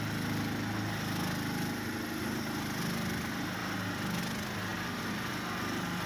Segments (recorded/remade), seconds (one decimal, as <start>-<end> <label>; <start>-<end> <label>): 0.0-6.1 recorded